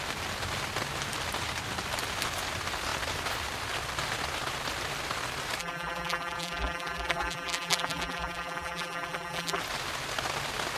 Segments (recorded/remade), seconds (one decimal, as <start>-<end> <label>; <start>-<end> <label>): 0.0-5.6 recorded; 5.6-9.6 remade; 9.6-10.8 recorded